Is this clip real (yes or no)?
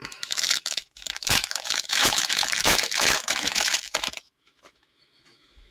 no